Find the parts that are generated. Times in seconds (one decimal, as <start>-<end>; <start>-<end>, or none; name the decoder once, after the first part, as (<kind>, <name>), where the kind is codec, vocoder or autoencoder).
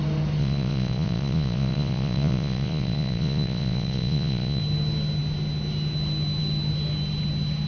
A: 0.4-4.6 (vocoder, Vocos)